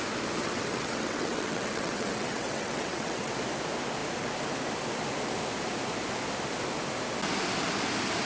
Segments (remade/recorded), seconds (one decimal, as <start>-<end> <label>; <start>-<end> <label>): 0.0-0.4 recorded; 0.4-3.3 remade; 3.3-8.2 recorded